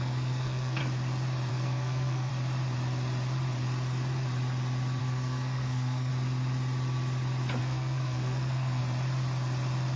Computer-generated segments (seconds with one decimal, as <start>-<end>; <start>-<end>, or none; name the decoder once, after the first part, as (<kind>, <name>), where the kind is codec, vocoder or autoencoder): 0.0-0.8 (codec, SNAC); 1.5-2.3; 5.0-6.1; 7.6-8.8